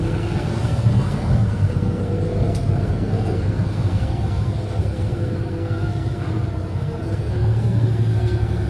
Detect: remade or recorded remade